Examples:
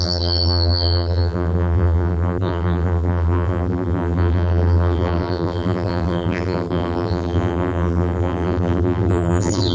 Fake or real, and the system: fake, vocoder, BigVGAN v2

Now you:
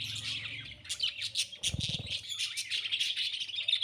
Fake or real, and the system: real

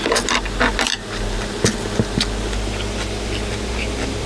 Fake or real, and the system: real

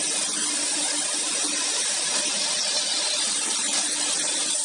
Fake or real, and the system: fake, vocoder, BigVGAN v2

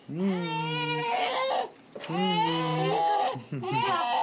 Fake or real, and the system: real